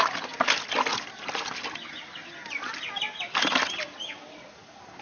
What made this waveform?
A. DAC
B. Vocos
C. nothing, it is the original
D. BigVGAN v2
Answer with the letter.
C